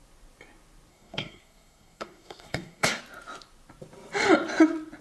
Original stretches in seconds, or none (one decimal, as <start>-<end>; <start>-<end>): 0.0-0.9; 3.0-5.0